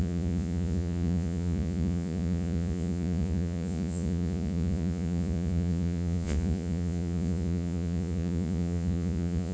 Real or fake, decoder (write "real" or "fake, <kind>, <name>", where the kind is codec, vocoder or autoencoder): fake, vocoder, Vocos